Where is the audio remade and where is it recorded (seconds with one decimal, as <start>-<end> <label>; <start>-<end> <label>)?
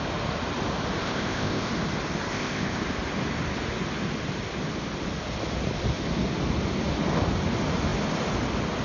0.0-1.0 recorded; 1.0-1.7 remade; 1.7-2.3 recorded; 2.3-2.8 remade; 2.8-8.8 recorded